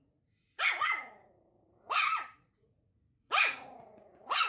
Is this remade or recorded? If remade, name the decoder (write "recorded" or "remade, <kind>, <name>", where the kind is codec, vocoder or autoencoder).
remade, vocoder, Vocos